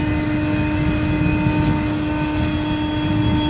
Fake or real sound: real